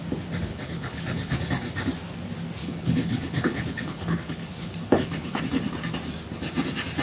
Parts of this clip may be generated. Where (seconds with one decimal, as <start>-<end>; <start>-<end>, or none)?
0.5-1.5; 2.6-5.4